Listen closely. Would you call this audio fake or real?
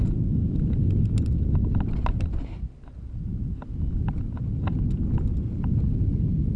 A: real